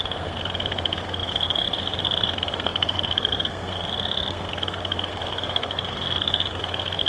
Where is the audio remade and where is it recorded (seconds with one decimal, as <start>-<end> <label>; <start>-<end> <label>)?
0.0-7.1 remade